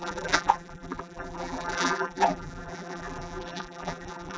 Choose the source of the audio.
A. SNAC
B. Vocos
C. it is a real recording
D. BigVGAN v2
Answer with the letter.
D